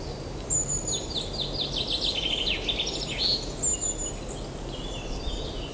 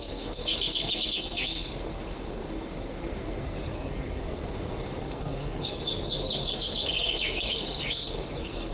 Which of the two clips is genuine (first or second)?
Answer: first